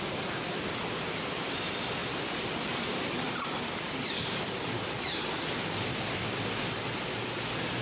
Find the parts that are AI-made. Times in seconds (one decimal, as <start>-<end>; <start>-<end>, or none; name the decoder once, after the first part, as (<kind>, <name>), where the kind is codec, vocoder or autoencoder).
2.0-6.7 (vocoder, BigVGAN v2)